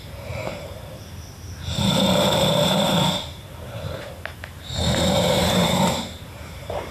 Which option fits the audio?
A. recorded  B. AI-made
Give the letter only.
B